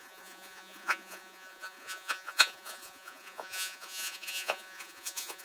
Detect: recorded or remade remade